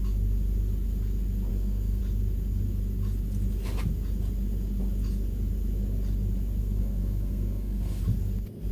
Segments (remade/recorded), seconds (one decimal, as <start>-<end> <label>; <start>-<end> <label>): 0.0-1.5 recorded; 1.5-2.0 remade; 2.0-6.6 recorded; 6.6-8.0 remade; 8.0-8.7 recorded